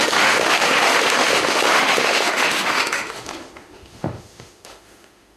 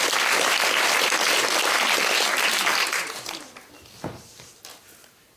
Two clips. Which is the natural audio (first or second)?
second